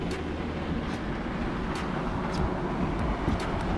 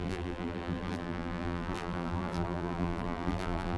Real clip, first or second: first